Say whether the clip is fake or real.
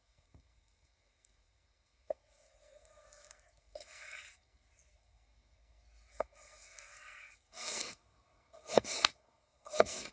fake